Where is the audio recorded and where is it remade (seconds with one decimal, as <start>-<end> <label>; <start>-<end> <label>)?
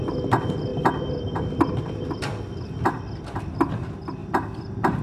0.0-0.7 recorded; 0.7-3.7 remade; 3.7-4.2 recorded; 4.2-5.0 remade